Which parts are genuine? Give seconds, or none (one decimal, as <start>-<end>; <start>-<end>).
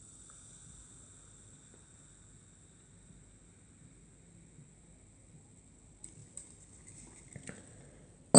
0.0-8.4